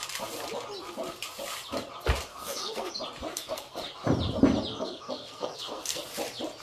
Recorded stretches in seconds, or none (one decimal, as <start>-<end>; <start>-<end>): 0.0-2.3; 2.9-3.3; 3.8-4.7; 6.0-6.6